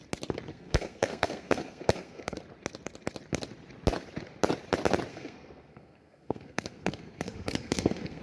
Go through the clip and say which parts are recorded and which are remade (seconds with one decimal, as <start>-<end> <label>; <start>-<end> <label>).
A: 0.0-0.5 recorded; 0.5-2.4 remade; 2.4-5.1 recorded; 5.1-8.2 remade